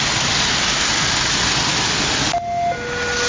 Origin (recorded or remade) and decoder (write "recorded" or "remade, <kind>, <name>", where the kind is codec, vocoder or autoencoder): recorded